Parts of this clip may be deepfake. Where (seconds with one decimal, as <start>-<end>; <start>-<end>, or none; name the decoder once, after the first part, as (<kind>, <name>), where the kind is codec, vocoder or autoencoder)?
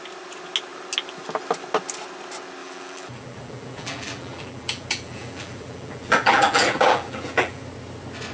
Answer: 2.6-7.6 (vocoder, BigVGAN v2)